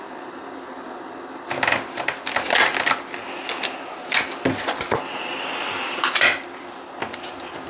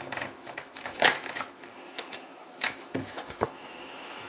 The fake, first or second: second